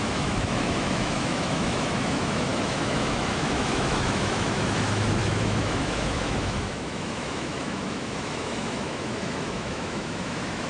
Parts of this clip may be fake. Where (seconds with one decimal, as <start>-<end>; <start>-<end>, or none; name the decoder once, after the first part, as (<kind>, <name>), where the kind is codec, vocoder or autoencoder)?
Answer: 0.0-10.7 (autoencoder, DAC-VAE)